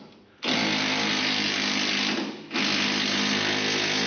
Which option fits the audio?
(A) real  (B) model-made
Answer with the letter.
A